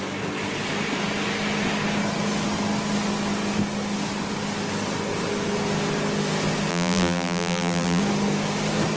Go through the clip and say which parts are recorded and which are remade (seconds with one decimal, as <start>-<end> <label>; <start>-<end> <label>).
0.0-6.7 recorded; 6.7-8.0 remade; 8.0-9.0 recorded